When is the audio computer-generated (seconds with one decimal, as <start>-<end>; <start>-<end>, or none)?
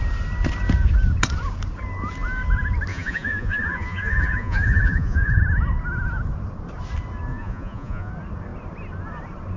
2.9-5.4; 7.3-8.1